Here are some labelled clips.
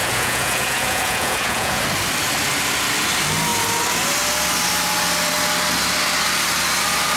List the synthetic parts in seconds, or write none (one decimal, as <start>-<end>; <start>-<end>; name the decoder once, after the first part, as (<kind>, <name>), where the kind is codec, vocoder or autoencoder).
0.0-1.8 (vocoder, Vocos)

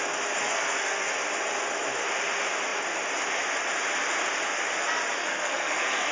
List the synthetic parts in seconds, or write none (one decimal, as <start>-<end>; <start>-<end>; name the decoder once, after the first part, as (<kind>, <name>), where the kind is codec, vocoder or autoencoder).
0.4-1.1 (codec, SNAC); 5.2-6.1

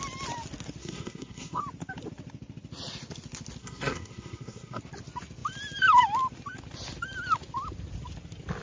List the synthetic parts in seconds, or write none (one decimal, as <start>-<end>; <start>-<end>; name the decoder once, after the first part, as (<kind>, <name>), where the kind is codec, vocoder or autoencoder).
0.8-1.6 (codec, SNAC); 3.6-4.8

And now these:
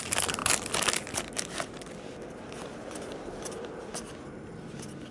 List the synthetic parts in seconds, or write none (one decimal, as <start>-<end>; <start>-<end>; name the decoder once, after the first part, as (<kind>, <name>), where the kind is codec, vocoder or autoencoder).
none

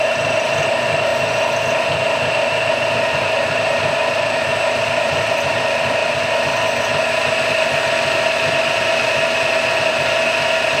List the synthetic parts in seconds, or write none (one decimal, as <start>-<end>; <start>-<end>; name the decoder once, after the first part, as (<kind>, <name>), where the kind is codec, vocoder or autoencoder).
0.0-1.1 (vocoder, BigVGAN v2); 2.7-6.0; 7.5-10.8

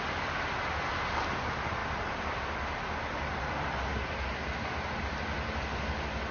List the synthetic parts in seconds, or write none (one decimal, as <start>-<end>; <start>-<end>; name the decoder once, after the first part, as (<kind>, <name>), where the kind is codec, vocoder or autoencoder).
none

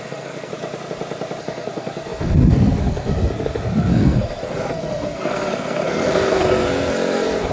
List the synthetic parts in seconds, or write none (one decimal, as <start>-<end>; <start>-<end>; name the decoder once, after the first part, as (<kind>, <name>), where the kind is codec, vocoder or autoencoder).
0.0-0.5 (codec, SNAC); 1.4-7.5

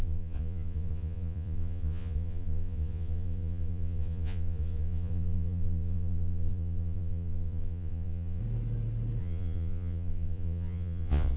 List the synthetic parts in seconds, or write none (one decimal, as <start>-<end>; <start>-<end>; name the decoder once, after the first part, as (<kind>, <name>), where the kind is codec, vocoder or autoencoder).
0.0-8.4 (vocoder, Vocos); 9.2-11.4